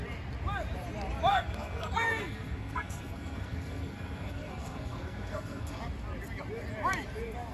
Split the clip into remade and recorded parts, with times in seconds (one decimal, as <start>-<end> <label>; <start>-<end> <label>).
0.0-1.3 recorded; 1.3-5.8 remade; 5.8-7.5 recorded